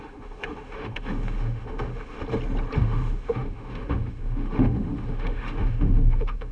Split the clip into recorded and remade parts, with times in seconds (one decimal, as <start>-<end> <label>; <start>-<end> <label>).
0.0-2.2 remade; 2.2-2.8 recorded; 2.8-6.5 remade

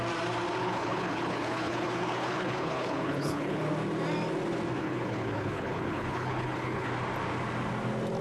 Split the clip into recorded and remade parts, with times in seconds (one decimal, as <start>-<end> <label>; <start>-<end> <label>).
0.0-0.6 recorded; 0.6-3.6 remade; 3.6-4.8 recorded; 4.8-6.9 remade; 6.9-8.2 recorded

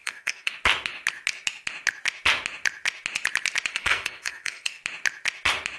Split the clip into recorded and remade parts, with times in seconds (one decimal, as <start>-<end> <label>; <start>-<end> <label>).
0.0-0.5 remade; 0.5-3.7 recorded; 3.7-4.8 remade; 4.8-5.8 recorded

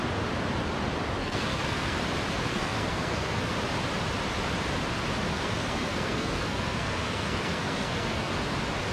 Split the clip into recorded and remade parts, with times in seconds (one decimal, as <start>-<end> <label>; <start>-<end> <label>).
0.0-1.2 recorded; 1.2-2.0 remade; 2.0-2.5 recorded; 2.5-3.5 remade; 3.5-5.3 recorded; 5.3-8.3 remade; 8.3-8.9 recorded

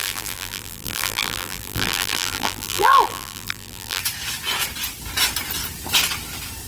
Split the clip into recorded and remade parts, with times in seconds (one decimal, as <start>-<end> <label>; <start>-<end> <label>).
0.0-4.0 remade; 4.0-6.7 recorded

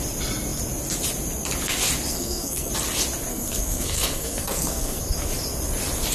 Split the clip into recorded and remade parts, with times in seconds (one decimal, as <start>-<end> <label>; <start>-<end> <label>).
0.0-2.1 recorded; 2.1-2.7 remade; 2.7-3.3 recorded; 3.3-5.0 remade; 5.0-6.1 recorded

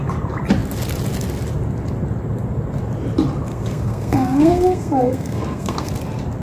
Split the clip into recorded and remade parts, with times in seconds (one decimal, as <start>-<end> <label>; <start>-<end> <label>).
0.0-3.5 recorded; 3.5-5.9 remade; 5.9-6.4 recorded

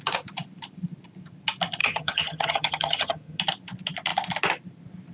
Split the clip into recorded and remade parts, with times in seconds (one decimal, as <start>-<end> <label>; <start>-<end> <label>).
0.0-1.8 recorded; 1.8-3.4 remade; 3.4-5.1 recorded